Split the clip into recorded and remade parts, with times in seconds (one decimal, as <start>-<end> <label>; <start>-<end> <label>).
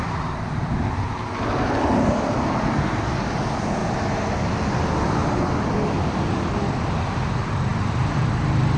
0.0-8.8 recorded